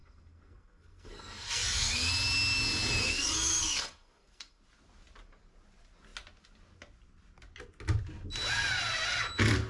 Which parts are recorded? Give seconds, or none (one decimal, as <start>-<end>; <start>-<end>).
2.1-3.0; 4.6-9.7